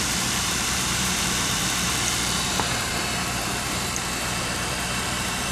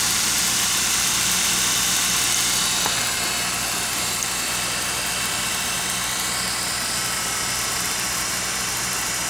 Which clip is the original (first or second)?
second